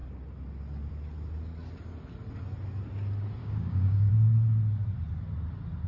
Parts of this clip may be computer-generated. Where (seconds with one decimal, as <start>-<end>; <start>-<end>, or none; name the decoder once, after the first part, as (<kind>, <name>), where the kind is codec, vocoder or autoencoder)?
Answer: 3.4-4.1 (codec, DAC)